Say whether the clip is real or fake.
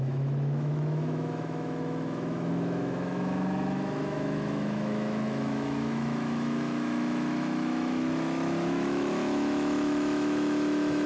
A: fake